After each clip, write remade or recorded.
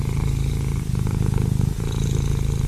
recorded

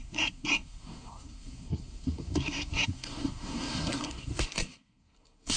remade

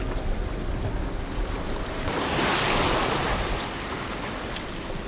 recorded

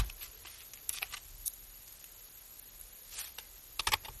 recorded